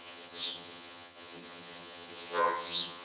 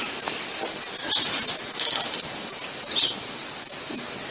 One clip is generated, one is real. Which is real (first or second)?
second